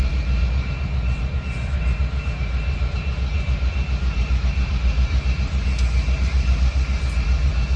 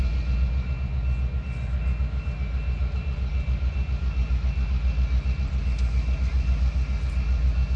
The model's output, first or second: first